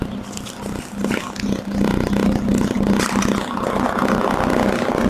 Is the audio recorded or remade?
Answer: recorded